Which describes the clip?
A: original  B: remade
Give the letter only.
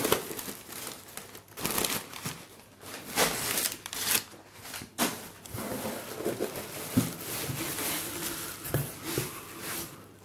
A